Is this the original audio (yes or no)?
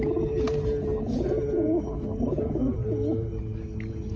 yes